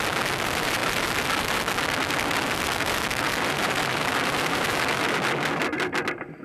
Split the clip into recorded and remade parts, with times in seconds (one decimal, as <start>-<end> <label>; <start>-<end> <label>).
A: 0.0-6.4 recorded